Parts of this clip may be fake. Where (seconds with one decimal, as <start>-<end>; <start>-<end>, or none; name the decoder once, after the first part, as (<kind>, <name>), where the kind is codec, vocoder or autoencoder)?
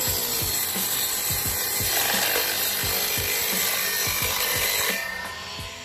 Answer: 1.3-1.9 (vocoder, BigVGAN v2)